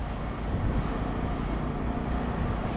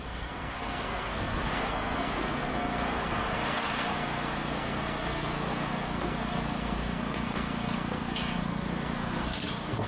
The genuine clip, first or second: first